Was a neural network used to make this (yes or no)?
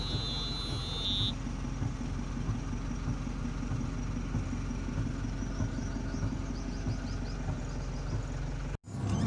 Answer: no